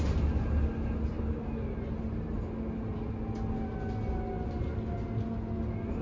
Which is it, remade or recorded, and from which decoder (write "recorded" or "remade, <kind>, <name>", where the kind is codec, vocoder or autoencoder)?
recorded